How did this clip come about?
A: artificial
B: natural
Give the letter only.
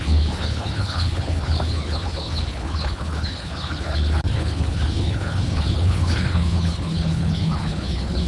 A